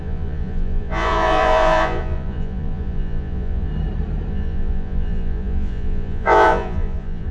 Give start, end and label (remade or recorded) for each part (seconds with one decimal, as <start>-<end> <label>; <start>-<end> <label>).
0.0-3.7 remade; 3.7-4.3 recorded; 4.3-7.3 remade